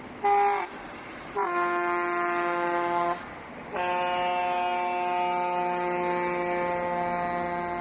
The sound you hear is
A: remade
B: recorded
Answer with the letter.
B